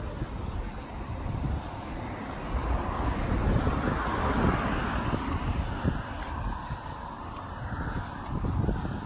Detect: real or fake real